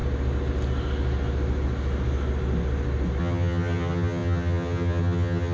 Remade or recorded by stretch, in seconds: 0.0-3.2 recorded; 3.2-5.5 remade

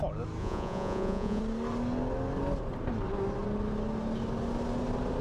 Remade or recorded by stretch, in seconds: 0.0-0.4 recorded; 0.4-1.4 remade; 1.4-5.2 recorded

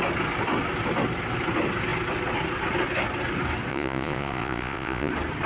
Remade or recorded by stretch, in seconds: 0.0-3.7 recorded; 3.7-5.1 remade; 5.1-5.5 recorded

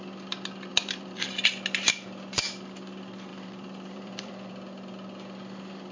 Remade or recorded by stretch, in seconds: 0.0-0.7 recorded; 0.7-1.3 remade; 1.3-3.3 recorded; 3.3-4.5 remade; 4.5-5.9 recorded

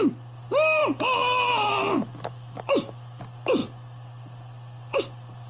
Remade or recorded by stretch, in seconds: 0.0-0.8 recorded; 0.8-3.2 remade; 3.2-5.5 recorded

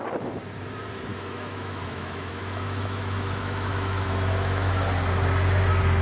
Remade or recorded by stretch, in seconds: 0.0-1.1 recorded; 1.1-4.7 remade; 4.7-6.0 recorded

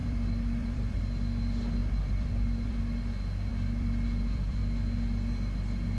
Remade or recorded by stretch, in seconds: 0.0-1.0 remade; 1.0-1.8 recorded; 1.8-2.8 remade; 2.8-3.5 recorded; 3.5-4.6 remade; 4.6-6.0 recorded